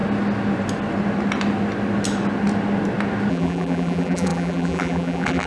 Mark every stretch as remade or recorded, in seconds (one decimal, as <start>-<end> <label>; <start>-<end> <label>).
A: 0.0-3.3 recorded; 3.3-5.5 remade